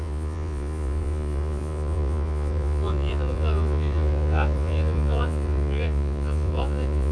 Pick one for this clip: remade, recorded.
remade